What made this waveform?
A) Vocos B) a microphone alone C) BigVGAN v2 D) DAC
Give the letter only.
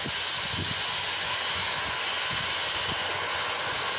A